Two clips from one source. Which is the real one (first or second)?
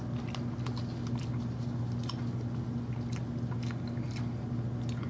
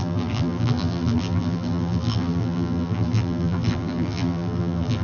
first